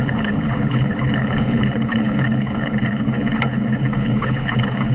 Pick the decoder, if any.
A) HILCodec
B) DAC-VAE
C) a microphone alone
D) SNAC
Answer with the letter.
A